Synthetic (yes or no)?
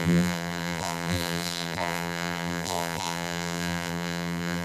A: yes